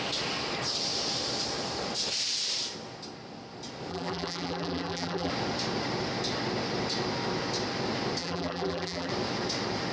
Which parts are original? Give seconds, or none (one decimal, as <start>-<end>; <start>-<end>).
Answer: 0.0-3.9; 5.3-8.2; 9.1-9.9